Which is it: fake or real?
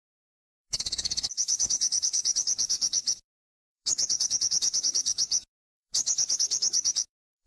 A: fake